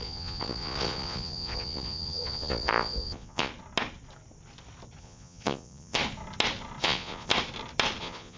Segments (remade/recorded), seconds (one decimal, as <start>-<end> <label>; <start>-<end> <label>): 0.0-3.5 remade; 3.5-5.0 recorded; 5.0-6.0 remade; 6.0-6.8 recorded; 6.8-7.3 remade; 7.3-8.0 recorded; 8.0-8.4 remade